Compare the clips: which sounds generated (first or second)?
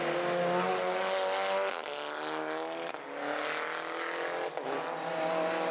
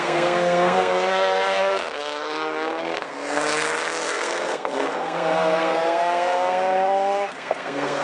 second